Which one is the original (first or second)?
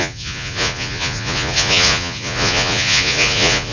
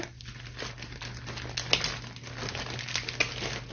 second